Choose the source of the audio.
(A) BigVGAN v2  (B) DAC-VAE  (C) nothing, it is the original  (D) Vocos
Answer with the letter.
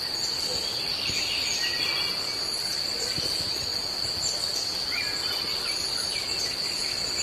C